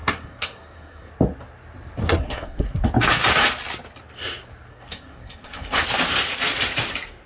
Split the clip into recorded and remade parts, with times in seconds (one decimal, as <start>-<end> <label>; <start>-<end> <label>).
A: 0.0-1.1 remade; 1.1-2.0 recorded; 2.0-2.8 remade; 2.8-4.7 recorded; 4.7-5.8 remade; 5.8-7.3 recorded